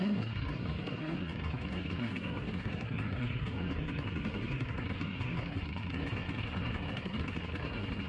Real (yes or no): no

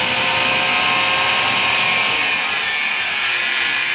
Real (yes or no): yes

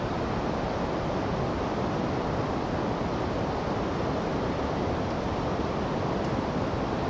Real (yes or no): yes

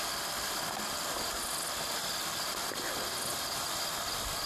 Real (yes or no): yes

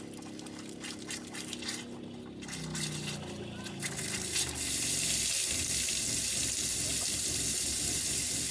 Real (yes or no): yes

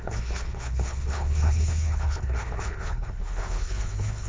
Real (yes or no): no